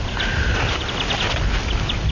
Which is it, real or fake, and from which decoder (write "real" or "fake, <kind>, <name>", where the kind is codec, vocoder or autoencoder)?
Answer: real